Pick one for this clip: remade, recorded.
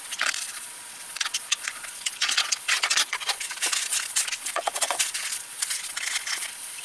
remade